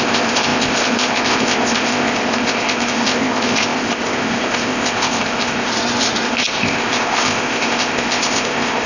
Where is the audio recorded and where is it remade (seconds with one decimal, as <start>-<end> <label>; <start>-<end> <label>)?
0.0-5.7 remade; 5.7-6.3 recorded; 6.3-8.9 remade